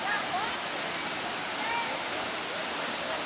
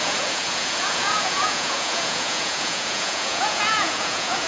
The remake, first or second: second